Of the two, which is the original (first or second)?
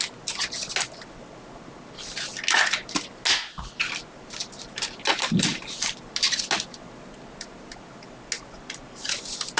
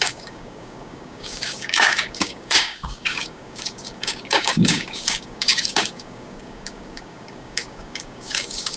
first